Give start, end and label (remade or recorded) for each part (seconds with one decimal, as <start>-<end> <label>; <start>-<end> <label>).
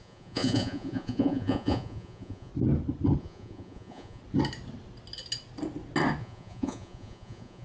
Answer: 0.0-2.5 remade; 2.5-3.2 recorded; 3.2-4.2 remade; 4.2-6.2 recorded; 6.2-7.6 remade